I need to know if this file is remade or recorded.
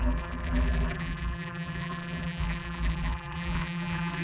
remade